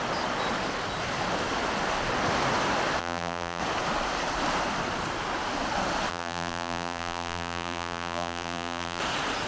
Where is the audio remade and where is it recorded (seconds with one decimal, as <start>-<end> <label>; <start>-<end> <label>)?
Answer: 0.0-3.0 recorded; 3.0-3.6 remade; 3.6-6.1 recorded; 6.1-9.0 remade; 9.0-9.5 recorded